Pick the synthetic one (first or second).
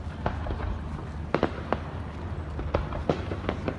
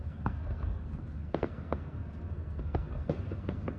second